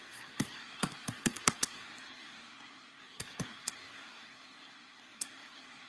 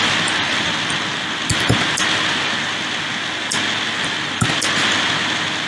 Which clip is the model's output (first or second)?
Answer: first